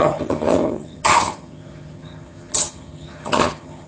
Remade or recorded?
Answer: remade